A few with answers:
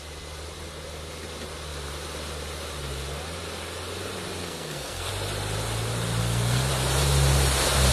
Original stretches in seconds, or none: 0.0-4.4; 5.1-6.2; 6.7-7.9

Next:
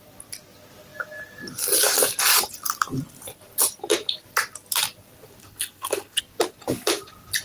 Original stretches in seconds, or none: 0.0-5.4; 6.2-7.4

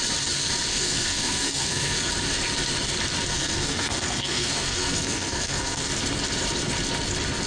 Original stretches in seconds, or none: 0.0-0.7; 2.1-3.3; 5.9-7.5